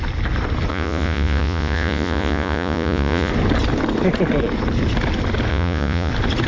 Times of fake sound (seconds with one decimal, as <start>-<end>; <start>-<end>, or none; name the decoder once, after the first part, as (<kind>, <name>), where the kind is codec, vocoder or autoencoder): 0.7-3.3 (vocoder, Vocos); 5.5-6.1